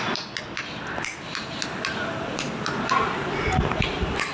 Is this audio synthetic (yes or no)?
no